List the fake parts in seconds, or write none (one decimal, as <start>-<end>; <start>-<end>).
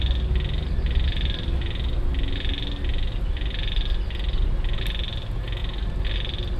none